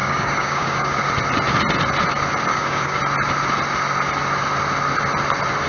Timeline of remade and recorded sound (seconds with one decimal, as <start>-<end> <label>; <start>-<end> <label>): 0.0-1.0 remade; 1.0-2.5 recorded; 2.5-3.0 remade; 3.0-5.7 recorded